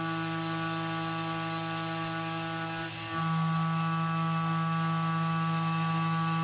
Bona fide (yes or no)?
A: yes